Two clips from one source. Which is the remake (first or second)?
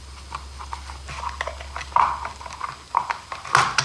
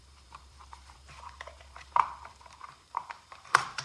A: second